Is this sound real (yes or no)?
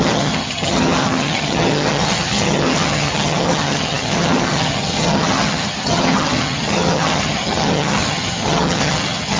no